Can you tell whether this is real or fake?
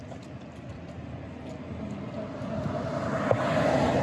real